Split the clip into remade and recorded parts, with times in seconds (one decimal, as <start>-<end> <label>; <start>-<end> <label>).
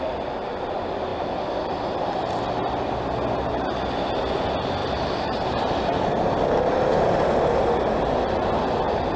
0.0-4.8 recorded; 4.8-5.6 remade; 5.6-9.2 recorded